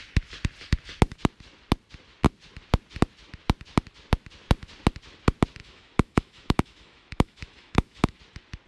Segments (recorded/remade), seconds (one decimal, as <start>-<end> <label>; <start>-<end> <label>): 0.0-5.6 recorded; 5.6-8.2 remade; 8.2-8.7 recorded